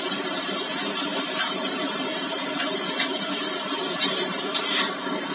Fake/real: fake